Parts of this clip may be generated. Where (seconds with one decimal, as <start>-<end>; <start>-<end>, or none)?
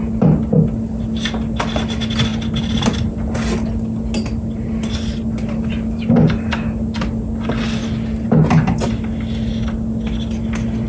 none